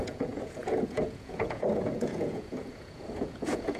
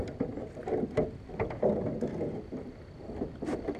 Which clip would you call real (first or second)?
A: second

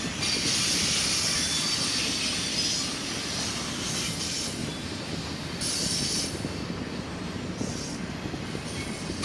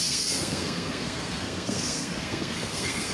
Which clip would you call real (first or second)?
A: first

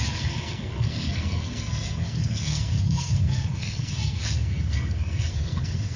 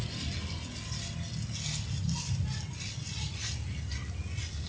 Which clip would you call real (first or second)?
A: second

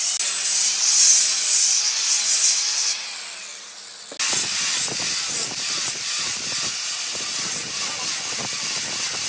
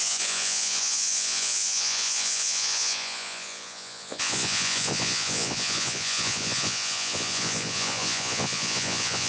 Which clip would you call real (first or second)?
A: first